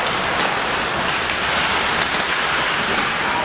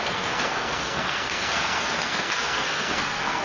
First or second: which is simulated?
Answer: second